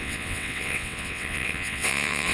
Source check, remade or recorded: remade